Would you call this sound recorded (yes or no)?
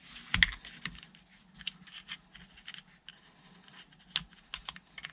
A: yes